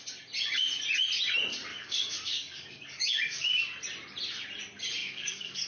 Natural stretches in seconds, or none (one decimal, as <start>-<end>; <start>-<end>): 0.0-1.7; 3.6-5.0